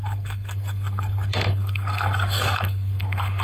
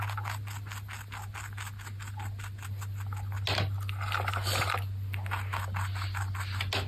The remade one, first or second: first